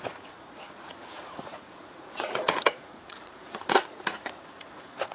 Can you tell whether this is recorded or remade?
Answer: remade